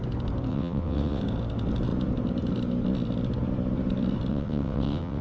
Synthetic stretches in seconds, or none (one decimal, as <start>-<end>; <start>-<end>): 0.5-1.2; 4.3-5.2